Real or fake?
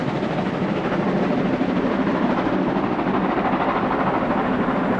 real